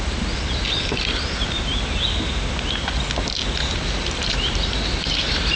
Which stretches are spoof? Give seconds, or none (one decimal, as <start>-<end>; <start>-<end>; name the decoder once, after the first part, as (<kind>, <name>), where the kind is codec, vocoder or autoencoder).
0.0-1.7 (vocoder, BigVGAN v2); 3.6-5.6